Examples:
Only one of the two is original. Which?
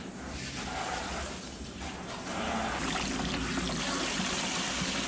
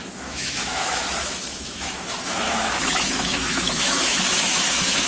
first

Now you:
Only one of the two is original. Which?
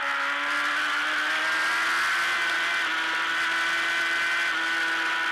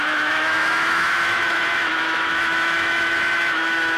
first